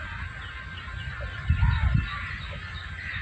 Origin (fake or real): real